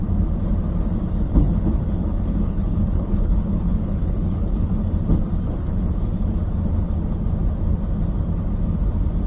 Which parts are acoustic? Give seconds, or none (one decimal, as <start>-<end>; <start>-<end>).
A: 0.0-1.3; 4.7-5.3; 5.9-9.3